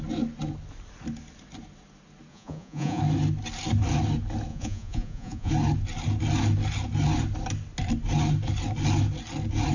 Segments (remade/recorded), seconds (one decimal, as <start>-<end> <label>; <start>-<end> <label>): 0.0-2.3 recorded; 2.3-3.0 remade; 3.0-4.5 recorded; 4.5-5.5 remade; 5.5-9.7 recorded